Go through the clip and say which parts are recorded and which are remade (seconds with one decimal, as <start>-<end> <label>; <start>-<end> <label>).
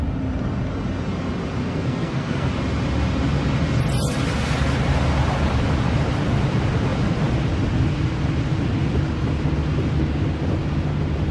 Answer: 0.0-1.6 recorded; 1.6-2.5 remade; 2.5-11.3 recorded